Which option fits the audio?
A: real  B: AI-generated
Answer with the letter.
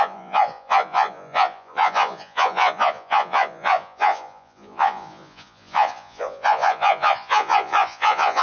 B